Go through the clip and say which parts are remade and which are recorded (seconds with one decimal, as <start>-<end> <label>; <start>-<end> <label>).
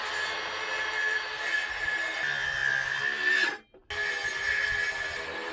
0.0-5.5 recorded